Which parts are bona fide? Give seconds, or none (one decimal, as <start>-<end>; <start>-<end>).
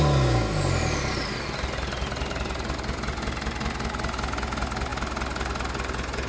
0.0-6.3